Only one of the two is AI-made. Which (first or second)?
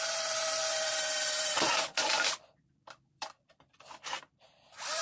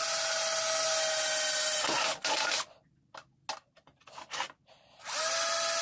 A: first